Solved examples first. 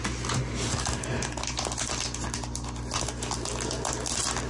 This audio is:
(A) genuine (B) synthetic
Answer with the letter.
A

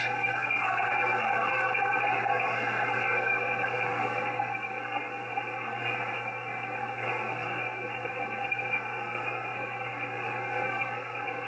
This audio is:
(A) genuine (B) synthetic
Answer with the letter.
B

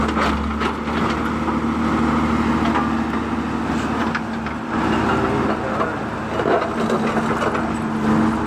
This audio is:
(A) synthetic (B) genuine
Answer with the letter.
B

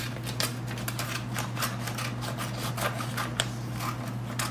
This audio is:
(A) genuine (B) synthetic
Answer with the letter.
A